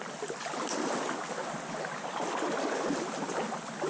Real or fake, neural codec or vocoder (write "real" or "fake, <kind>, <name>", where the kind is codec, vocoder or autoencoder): real